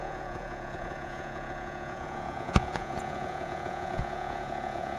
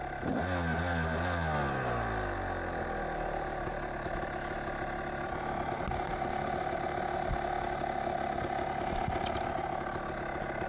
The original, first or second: second